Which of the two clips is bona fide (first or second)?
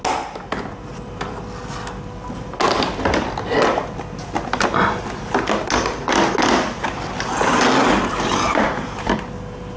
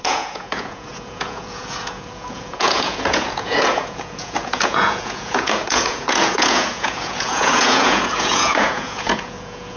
first